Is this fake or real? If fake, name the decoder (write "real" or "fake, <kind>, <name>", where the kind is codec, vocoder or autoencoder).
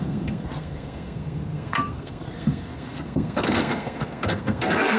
fake, codec, SNAC